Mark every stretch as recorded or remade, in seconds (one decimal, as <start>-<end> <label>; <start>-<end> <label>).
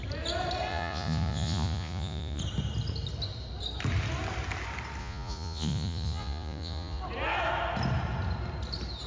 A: 0.0-0.7 recorded; 0.7-2.4 remade; 2.4-5.0 recorded; 5.0-7.0 remade; 7.0-9.1 recorded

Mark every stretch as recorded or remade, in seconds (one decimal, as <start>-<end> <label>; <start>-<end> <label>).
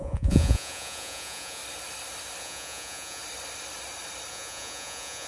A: 0.0-1.6 remade; 1.6-2.4 recorded; 2.4-3.2 remade; 3.2-4.3 recorded; 4.3-5.3 remade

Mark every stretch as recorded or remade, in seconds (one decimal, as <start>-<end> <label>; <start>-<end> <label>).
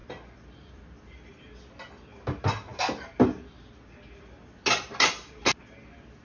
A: 0.0-6.2 recorded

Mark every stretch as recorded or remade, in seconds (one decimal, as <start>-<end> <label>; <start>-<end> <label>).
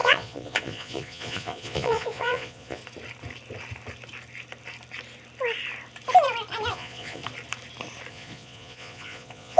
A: 0.0-2.8 remade; 2.8-6.7 recorded; 6.7-7.2 remade; 7.2-8.1 recorded; 8.1-9.6 remade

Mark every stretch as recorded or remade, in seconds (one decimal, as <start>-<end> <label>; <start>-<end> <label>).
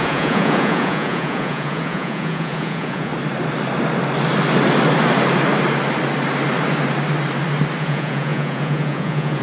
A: 0.0-3.1 remade; 3.1-7.8 recorded; 7.8-9.4 remade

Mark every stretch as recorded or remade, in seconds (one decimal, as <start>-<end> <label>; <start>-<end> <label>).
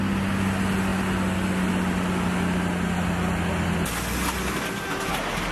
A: 0.0-5.5 recorded